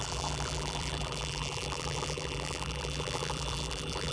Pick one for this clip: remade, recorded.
remade